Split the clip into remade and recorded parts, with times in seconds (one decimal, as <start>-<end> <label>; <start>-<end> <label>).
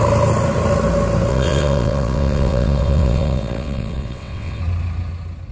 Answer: 0.0-1.3 recorded; 1.3-4.6 remade; 4.6-5.5 recorded